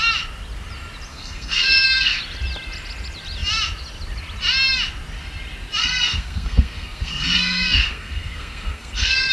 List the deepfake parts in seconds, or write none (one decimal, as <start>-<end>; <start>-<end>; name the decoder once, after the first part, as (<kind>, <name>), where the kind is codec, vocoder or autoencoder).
1.1-2.2 (codec, SNAC); 5.8-9.3